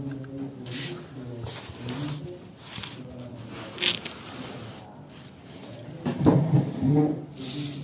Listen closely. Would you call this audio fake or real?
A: real